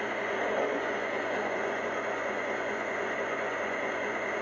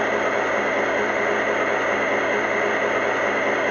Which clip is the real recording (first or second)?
second